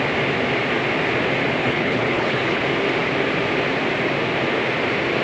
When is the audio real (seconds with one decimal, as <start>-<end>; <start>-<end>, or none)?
0.0-1.6; 2.6-5.2